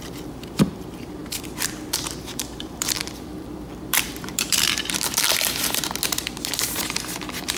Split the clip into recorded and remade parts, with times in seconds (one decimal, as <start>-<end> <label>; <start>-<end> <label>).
0.0-1.2 recorded; 1.2-5.8 remade; 5.8-7.6 recorded